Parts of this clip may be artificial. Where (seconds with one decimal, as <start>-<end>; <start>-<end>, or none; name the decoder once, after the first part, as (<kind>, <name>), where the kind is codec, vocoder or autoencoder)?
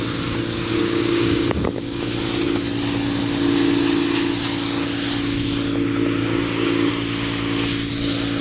0.7-2.1 (codec, DAC); 6.2-6.9